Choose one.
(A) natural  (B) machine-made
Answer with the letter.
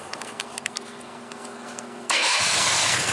B